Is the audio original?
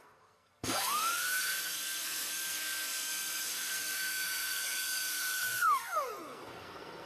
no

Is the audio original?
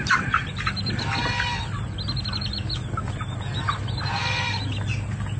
yes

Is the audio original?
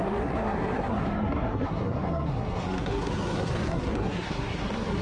no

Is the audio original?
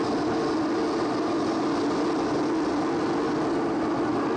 yes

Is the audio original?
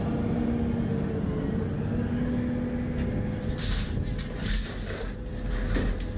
yes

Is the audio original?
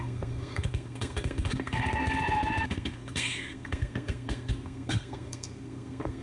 no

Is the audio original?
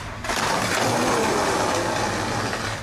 yes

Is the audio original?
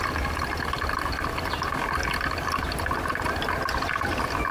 yes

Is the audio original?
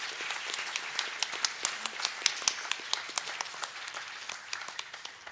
yes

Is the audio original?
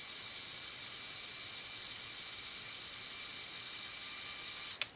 yes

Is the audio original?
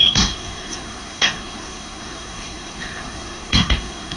no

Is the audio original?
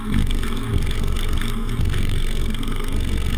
no